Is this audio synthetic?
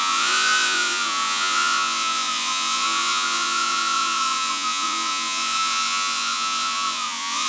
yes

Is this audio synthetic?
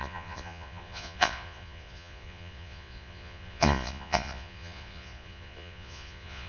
yes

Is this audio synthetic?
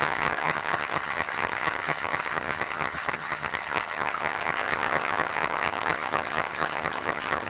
yes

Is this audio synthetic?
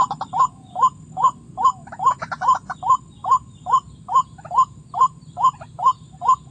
no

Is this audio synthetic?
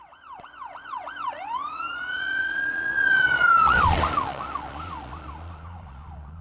yes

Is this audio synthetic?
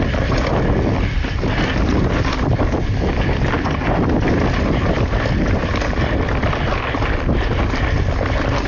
no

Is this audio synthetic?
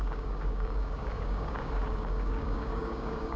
yes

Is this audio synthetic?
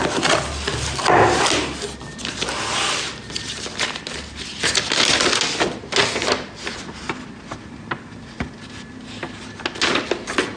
no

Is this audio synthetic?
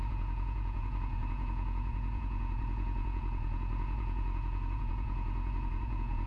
yes